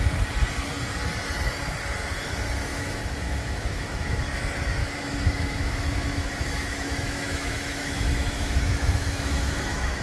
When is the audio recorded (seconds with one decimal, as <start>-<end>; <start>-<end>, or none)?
0.0-2.7; 4.2-4.8

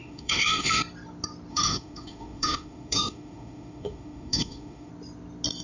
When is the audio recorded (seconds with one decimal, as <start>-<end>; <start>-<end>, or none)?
0.8-1.5; 4.9-5.6

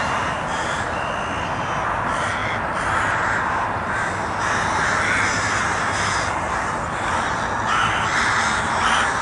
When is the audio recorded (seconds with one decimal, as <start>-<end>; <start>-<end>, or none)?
0.0-9.2

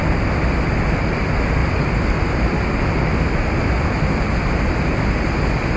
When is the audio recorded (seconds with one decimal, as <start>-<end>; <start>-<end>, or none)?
0.0-5.8